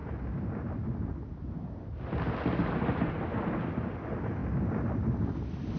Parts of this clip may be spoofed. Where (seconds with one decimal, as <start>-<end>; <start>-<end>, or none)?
none